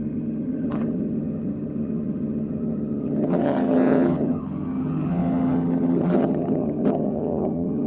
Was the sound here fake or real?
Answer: fake